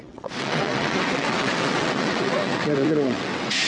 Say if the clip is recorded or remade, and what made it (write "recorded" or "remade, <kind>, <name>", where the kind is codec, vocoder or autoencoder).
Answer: remade, vocoder, WaveNeXt